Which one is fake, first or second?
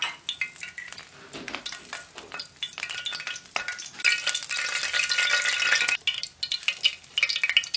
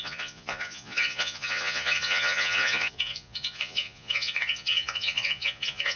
second